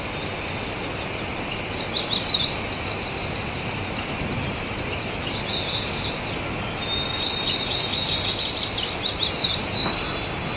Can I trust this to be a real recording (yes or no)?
yes